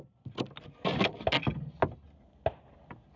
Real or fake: real